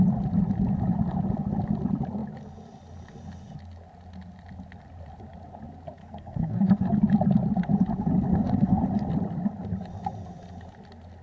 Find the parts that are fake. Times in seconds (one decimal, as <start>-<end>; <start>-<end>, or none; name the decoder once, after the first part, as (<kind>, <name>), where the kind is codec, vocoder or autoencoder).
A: 6.0-6.9 (codec, SNAC); 8.3-8.8